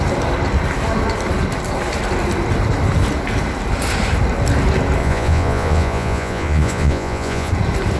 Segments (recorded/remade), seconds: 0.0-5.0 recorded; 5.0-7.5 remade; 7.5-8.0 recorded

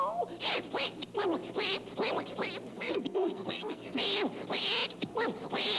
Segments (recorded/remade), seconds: 0.0-2.7 recorded; 2.7-4.0 remade; 4.0-5.8 recorded

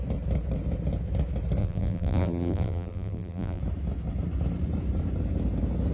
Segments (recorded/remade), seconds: 0.0-1.6 recorded; 1.6-3.6 remade; 3.6-5.9 recorded

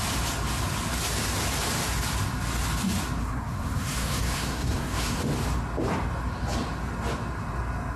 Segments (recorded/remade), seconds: 0.0-3.2 recorded; 3.2-5.2 remade; 5.2-8.0 recorded

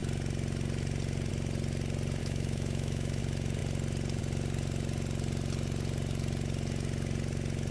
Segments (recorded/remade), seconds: 0.0-2.2 recorded; 2.2-3.2 remade; 3.2-7.7 recorded

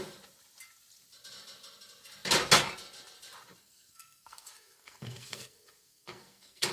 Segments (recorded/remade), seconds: 0.0-3.6 recorded; 3.6-6.7 remade